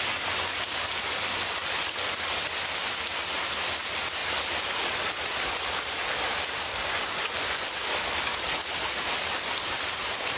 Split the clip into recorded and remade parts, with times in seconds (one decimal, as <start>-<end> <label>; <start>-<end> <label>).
0.0-6.8 recorded; 6.8-7.7 remade; 7.7-10.4 recorded